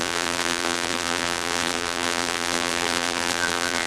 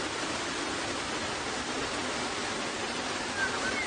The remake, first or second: first